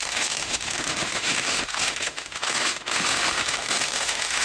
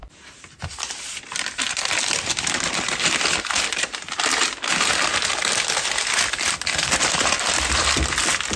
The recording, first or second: second